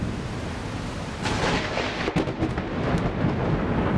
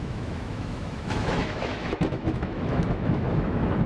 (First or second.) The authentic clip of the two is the first